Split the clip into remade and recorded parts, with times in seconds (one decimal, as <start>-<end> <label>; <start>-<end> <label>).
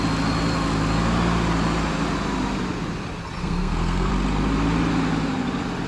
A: 0.0-3.4 recorded; 3.4-4.1 remade; 4.1-5.9 recorded